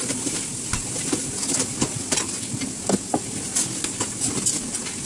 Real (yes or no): yes